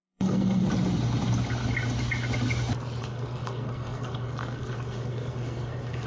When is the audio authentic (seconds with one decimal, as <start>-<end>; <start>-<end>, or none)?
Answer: 0.6-3.0